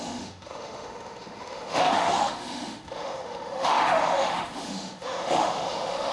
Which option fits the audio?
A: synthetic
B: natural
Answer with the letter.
A